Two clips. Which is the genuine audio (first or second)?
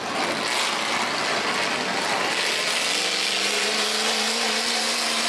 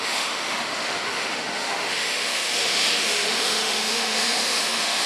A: first